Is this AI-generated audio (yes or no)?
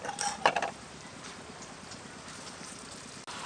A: no